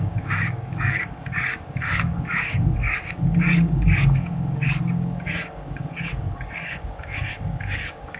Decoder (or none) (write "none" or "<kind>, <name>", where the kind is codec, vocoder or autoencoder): codec, DAC